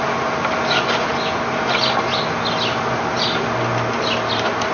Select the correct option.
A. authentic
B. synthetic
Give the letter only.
A